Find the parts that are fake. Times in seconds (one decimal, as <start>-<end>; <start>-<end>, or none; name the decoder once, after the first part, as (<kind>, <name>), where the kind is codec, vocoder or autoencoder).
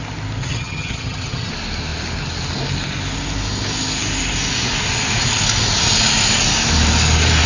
0.4-1.5 (vocoder, HiFi-GAN)